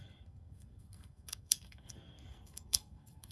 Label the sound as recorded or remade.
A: remade